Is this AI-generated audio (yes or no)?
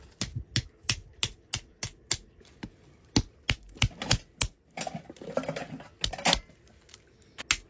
no